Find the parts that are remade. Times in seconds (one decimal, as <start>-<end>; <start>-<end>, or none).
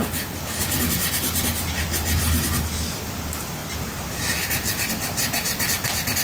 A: none